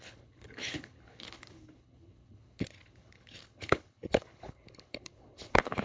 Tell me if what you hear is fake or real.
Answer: fake